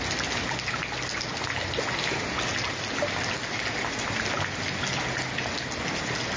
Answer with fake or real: real